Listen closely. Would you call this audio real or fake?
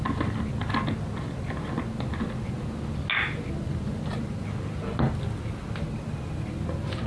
real